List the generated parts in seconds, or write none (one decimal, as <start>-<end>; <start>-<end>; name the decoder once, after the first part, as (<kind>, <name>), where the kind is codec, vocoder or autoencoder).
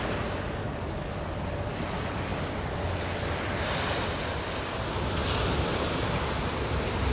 none